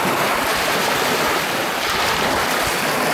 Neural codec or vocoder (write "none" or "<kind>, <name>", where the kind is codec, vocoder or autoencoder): none